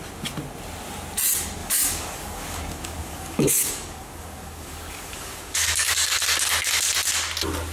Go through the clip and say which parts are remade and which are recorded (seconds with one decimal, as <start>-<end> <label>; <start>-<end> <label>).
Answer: 0.0-1.6 recorded; 1.6-6.2 remade; 6.2-7.7 recorded